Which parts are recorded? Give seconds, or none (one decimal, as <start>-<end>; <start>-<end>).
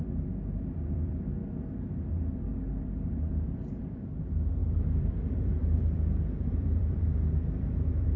none